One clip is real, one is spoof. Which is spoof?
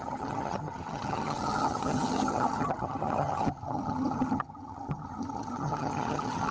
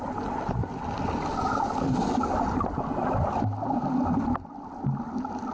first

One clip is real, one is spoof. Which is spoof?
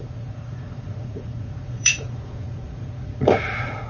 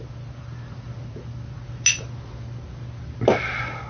first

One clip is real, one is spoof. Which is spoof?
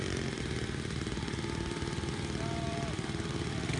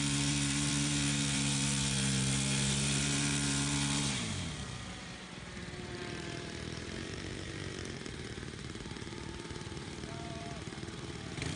second